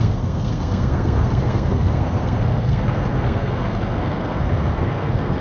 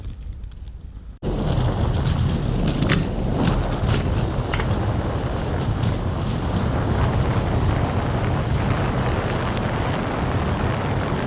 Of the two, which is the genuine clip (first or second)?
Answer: second